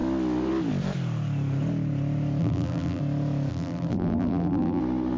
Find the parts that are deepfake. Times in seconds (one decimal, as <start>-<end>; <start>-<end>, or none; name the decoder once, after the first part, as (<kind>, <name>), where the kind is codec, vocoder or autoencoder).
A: 2.4-3.0 (vocoder, BigVGAN v2); 3.5-4.8